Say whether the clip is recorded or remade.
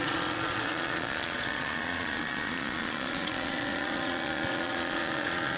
remade